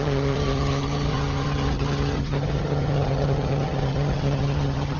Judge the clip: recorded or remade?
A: remade